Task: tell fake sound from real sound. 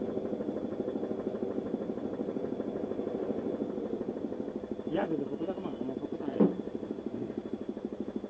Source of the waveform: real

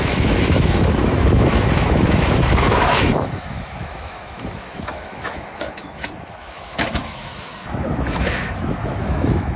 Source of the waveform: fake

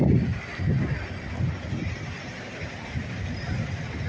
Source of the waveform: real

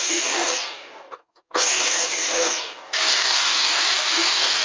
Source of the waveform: fake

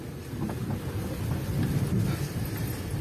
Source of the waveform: real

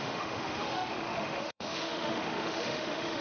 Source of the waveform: fake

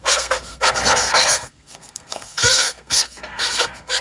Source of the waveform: fake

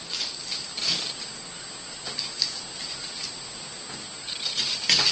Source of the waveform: real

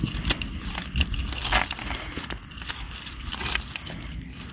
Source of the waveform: real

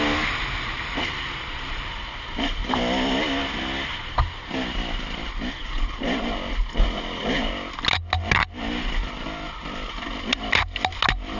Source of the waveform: real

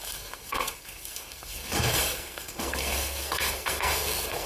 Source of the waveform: fake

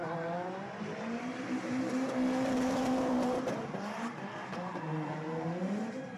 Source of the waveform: fake